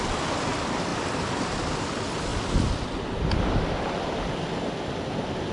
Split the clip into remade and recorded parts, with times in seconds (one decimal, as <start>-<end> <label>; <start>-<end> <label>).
0.0-5.5 recorded